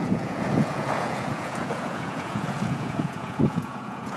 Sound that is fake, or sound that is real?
fake